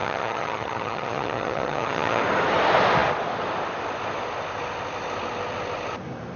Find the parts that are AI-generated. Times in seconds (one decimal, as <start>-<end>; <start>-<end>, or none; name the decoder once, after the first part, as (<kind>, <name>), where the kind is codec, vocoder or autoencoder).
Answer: 0.0-2.2 (vocoder, HiFi-GAN)